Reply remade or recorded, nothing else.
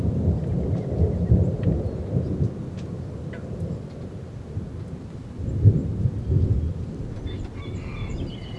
recorded